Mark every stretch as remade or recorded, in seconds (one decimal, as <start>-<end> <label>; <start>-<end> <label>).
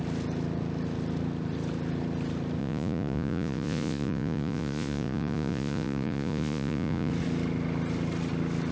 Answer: 0.0-2.6 recorded; 2.6-7.1 remade; 7.1-8.7 recorded